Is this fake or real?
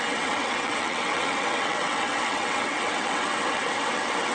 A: fake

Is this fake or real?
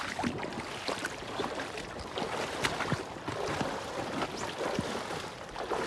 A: real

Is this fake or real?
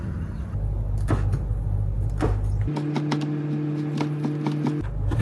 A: real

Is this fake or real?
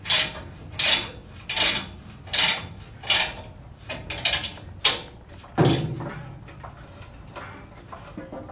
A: real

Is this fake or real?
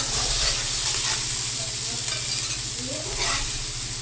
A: real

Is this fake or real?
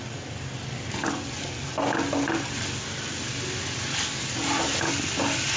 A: real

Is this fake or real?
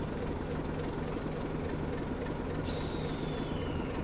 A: real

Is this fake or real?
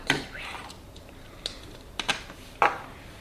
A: real